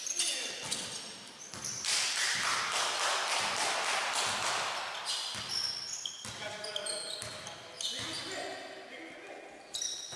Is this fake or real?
real